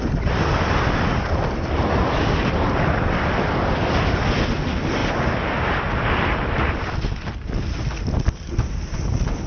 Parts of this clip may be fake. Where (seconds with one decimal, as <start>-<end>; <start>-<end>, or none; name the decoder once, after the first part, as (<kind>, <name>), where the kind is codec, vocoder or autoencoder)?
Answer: none